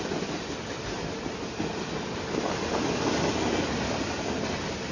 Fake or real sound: real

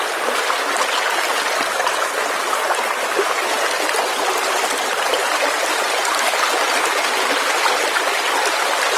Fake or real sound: real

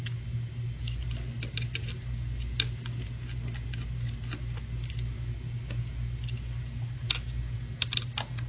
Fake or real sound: real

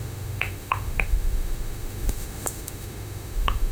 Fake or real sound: fake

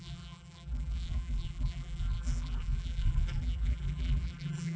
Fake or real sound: fake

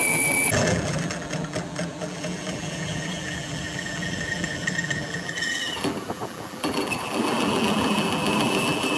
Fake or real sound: fake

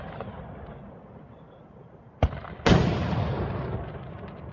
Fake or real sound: real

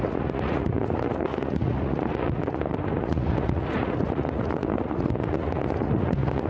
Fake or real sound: fake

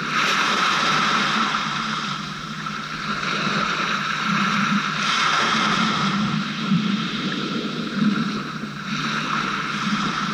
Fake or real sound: fake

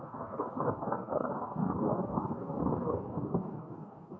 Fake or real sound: fake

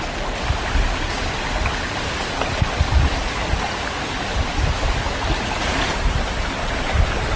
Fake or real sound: real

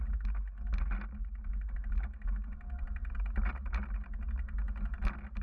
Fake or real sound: real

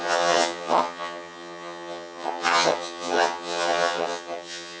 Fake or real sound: fake